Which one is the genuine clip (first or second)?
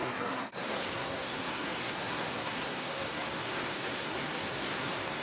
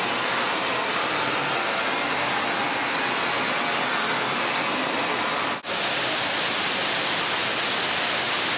second